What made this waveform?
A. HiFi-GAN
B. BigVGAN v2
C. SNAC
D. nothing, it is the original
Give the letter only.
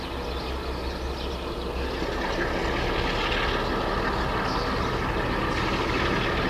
D